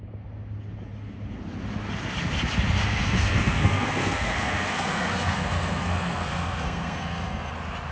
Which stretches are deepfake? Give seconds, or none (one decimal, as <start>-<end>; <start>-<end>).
2.8-7.5